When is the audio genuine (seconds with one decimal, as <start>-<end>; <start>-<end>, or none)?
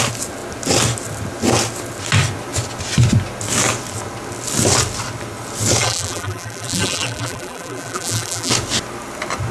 0.0-5.8; 8.5-9.5